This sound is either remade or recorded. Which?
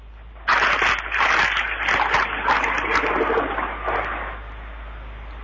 recorded